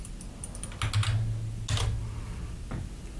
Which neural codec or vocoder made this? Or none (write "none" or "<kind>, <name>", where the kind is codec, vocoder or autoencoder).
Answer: none